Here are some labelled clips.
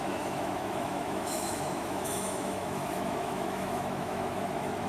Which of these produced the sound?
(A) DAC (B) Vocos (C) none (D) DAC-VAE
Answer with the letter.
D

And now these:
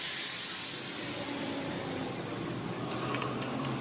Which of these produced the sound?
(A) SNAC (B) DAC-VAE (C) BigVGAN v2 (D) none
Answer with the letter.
D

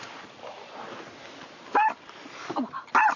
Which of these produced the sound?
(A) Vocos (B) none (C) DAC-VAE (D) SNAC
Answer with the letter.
B